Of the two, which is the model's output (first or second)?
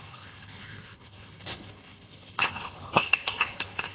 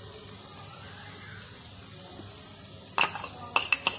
first